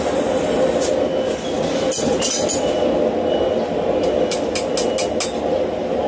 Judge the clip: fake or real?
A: real